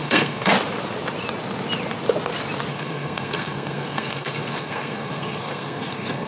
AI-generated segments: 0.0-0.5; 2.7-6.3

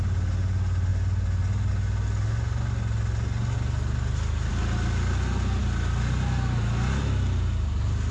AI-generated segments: none

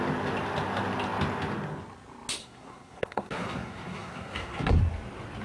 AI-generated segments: 2.4-4.8

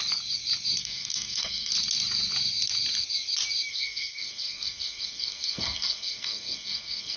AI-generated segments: 0.8-1.7; 3.7-7.2